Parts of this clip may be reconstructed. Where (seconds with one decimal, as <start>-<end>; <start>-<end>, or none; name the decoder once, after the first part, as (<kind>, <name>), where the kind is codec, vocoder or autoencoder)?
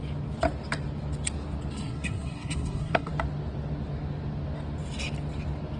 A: 1.7-3.1 (codec, SNAC)